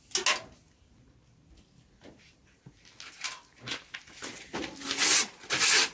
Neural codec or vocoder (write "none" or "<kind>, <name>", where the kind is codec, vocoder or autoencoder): none